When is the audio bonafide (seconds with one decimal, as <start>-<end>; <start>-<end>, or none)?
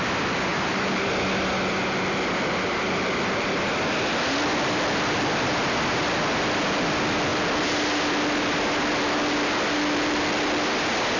0.0-0.5; 1.1-11.2